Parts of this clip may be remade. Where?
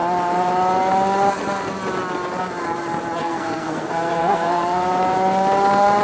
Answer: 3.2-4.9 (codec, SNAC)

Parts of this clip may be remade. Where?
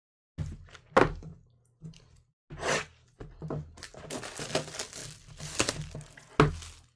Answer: none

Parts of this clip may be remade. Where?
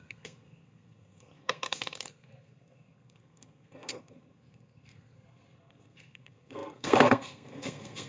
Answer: 0.0-8.1 (codec, SNAC)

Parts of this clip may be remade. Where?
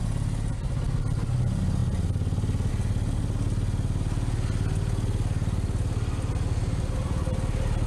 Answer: none